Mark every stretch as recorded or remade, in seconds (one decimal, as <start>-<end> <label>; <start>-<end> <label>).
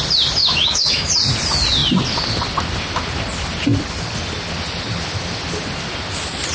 0.0-0.4 recorded; 0.4-1.1 remade; 1.1-6.5 recorded